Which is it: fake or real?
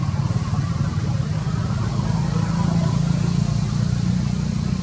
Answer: real